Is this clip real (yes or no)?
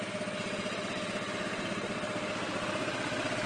yes